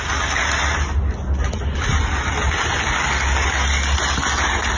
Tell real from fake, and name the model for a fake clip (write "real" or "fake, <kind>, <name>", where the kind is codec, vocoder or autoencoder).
real